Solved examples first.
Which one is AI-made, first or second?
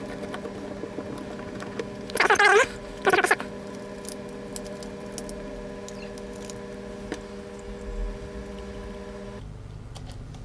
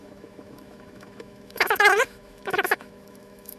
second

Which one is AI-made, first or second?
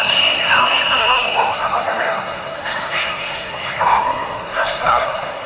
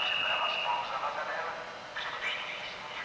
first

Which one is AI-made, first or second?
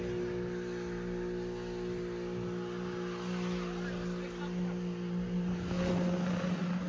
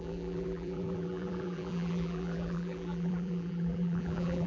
second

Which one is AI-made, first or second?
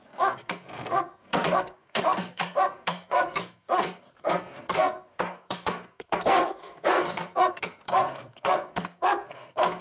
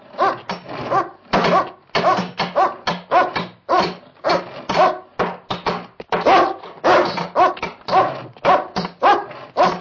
first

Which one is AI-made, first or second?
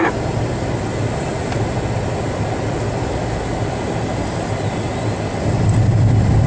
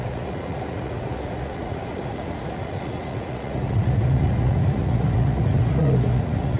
second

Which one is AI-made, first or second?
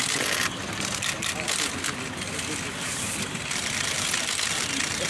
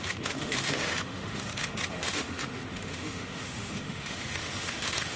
second